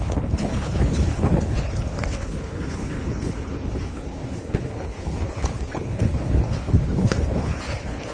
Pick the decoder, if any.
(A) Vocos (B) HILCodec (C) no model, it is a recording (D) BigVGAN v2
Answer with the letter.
B